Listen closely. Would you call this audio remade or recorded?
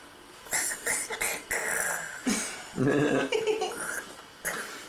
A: recorded